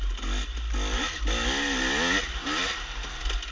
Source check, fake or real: real